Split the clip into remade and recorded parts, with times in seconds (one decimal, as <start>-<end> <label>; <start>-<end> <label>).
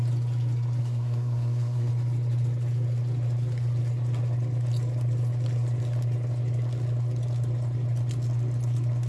0.0-0.8 recorded; 0.8-1.9 remade; 1.9-9.1 recorded